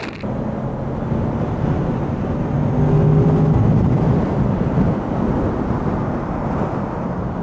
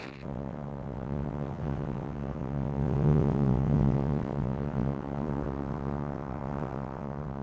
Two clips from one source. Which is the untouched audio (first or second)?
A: first